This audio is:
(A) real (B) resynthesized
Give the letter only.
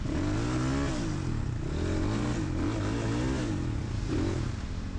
A